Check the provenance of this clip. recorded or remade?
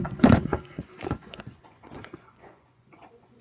remade